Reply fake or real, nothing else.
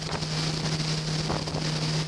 real